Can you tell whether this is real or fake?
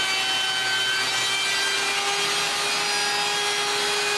real